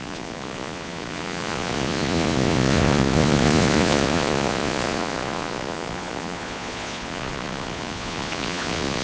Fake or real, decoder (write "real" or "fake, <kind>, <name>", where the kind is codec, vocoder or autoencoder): fake, vocoder, Vocos